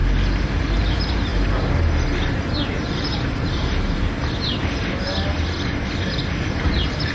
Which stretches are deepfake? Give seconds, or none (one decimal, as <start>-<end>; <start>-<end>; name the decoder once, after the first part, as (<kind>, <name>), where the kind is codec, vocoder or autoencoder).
0.6-1.3 (vocoder, BigVGAN v2); 2.7-4.2; 6.5-7.1

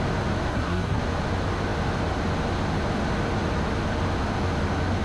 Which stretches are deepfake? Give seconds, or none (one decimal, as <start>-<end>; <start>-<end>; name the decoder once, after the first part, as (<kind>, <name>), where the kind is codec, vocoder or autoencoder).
0.5-1.0 (codec, SNAC)